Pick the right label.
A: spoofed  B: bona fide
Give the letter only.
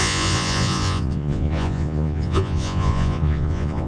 A